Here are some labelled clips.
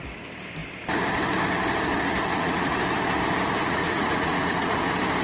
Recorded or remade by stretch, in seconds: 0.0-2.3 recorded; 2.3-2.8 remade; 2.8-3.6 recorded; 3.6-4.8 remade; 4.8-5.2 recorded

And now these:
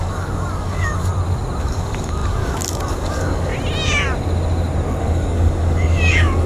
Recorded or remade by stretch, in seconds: 0.0-1.1 remade; 1.1-1.6 recorded; 1.6-3.5 remade; 3.5-5.0 recorded; 5.0-6.5 remade

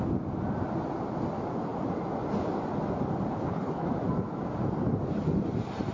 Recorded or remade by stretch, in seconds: 0.0-3.3 recorded; 3.3-3.9 remade; 3.9-5.9 recorded

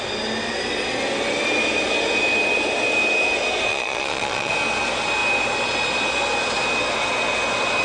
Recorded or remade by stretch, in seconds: 0.0-3.7 recorded; 3.7-4.5 remade; 4.5-7.8 recorded

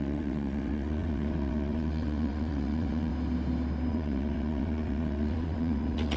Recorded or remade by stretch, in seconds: 0.0-3.1 remade; 3.1-3.9 recorded; 3.9-6.2 remade

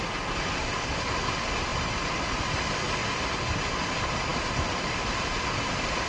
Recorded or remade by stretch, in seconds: 0.0-1.7 recorded; 1.7-2.2 remade; 2.2-3.0 recorded; 3.0-3.9 remade; 3.9-4.3 recorded; 4.3-5.1 remade; 5.1-6.1 recorded

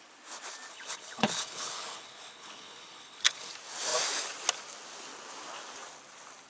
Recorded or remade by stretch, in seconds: 0.0-0.7 recorded; 0.7-3.5 remade; 3.5-6.5 recorded